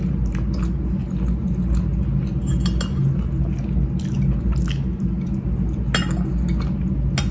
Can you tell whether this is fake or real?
real